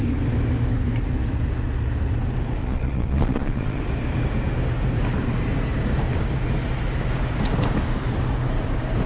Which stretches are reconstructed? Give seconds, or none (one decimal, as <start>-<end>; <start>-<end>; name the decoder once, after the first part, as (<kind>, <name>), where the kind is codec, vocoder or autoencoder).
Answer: 2.6-3.8 (vocoder, Vocos)